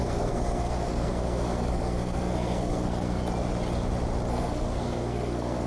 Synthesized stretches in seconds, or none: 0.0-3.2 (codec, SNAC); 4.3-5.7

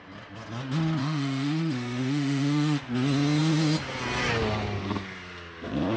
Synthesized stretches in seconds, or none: 1.0-2.8 (autoencoder, DAC-VAE)

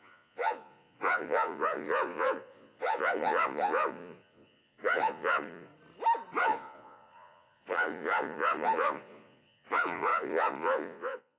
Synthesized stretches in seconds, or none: 0.0-5.7 (vocoder, Vocos); 6.4-11.4

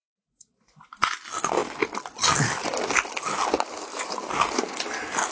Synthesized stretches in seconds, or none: 0.0-1.1 (vocoder, Vocos)

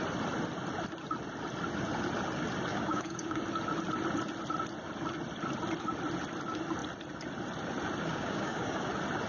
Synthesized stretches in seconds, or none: 2.7-3.4 (codec, DAC); 8.1-8.9

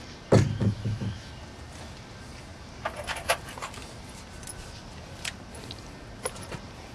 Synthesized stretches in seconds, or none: 0.5-1.3 (autoencoder, DAC-VAE)